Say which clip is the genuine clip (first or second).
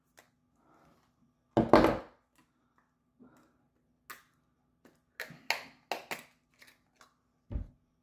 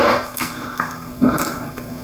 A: first